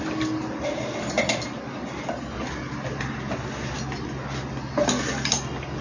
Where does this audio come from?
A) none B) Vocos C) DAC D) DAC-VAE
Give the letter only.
A